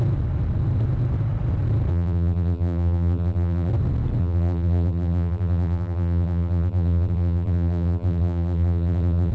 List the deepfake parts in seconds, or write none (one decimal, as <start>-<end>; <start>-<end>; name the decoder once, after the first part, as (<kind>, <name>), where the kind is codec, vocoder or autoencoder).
1.9-3.7 (vocoder, BigVGAN v2); 4.2-9.3